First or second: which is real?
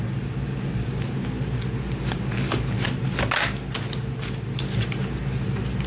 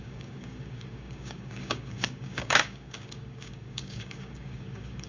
first